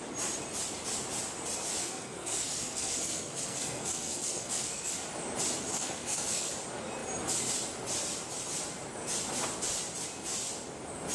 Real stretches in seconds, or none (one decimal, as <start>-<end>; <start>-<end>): 0.0-1.8; 4.9-5.7; 6.5-11.1